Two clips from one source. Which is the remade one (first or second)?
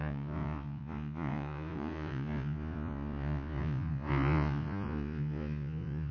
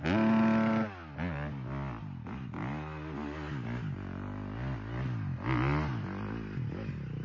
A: first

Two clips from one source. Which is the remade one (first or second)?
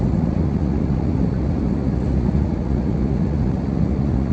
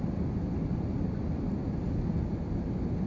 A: first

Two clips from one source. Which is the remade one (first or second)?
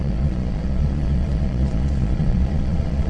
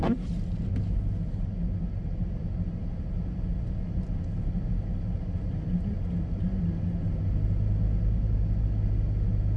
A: first